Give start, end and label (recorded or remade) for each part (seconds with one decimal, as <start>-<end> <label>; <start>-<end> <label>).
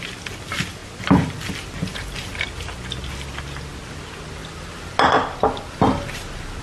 0.0-6.6 recorded